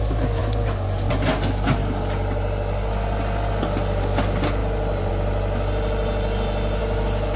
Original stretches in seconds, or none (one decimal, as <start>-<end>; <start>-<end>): 0.0-6.8